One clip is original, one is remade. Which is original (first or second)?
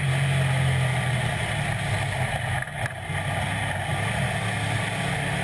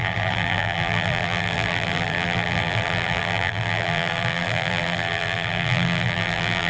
first